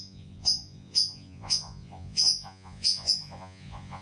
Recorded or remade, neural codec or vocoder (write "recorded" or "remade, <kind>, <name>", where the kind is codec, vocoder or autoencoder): remade, vocoder, Vocos